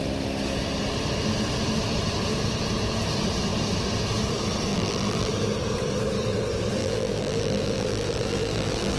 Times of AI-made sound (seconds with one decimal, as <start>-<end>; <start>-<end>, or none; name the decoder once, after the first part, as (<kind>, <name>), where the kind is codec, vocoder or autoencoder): 4.7-5.3 (vocoder, BigVGAN v2); 6.8-9.0